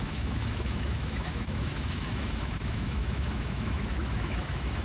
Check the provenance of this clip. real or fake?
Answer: fake